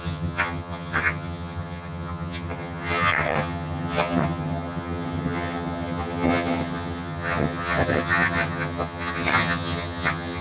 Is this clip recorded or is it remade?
remade